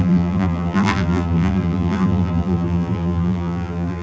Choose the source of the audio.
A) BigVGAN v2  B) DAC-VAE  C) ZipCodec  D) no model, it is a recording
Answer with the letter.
A